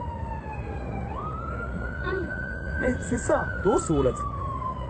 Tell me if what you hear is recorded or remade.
remade